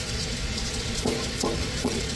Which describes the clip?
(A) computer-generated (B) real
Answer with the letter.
A